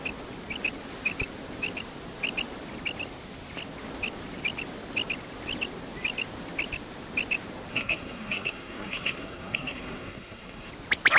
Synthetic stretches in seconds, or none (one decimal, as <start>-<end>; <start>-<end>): 7.7-10.7